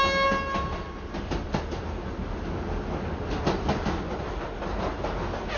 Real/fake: real